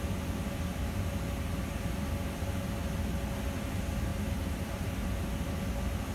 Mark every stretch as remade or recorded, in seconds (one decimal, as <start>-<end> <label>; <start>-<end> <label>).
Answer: 0.0-0.7 recorded; 0.7-2.1 remade; 2.1-4.1 recorded; 4.1-5.1 remade; 5.1-6.1 recorded